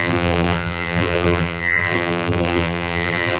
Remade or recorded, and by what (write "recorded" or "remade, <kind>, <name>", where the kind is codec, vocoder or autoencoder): remade, vocoder, BigVGAN v2